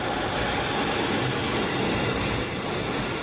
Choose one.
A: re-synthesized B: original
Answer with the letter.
B